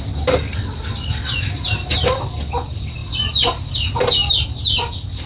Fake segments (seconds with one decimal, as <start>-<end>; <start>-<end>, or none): none